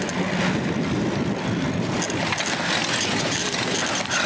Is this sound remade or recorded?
recorded